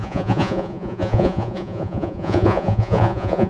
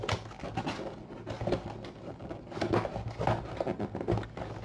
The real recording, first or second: second